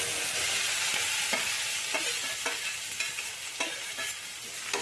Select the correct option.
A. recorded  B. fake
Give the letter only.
A